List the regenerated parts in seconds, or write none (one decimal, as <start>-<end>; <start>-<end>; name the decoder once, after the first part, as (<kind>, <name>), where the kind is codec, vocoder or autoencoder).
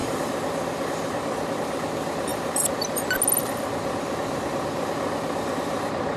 none